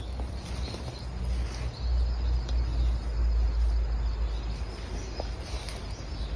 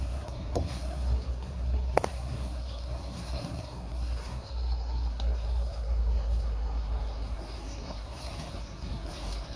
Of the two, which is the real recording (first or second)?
first